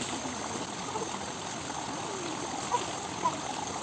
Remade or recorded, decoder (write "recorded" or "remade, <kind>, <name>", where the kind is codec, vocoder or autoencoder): recorded